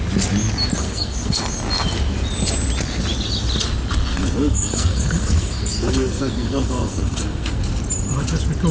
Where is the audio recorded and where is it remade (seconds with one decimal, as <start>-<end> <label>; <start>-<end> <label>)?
0.0-0.8 recorded; 0.8-1.4 remade; 1.4-4.1 recorded; 4.1-7.6 remade; 7.6-8.7 recorded